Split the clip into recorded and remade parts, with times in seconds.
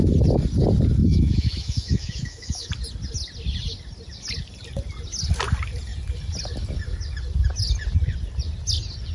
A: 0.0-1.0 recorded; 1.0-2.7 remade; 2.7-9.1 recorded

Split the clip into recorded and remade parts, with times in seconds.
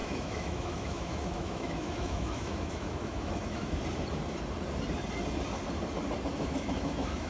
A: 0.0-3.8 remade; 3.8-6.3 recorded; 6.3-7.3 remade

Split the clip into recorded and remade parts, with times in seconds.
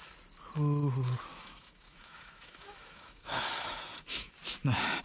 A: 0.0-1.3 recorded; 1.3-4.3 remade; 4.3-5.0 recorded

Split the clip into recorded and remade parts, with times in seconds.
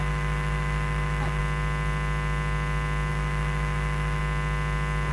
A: 0.0-1.4 remade; 1.4-3.1 recorded; 3.1-4.2 remade; 4.2-5.1 recorded